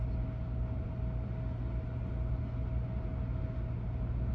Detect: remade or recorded recorded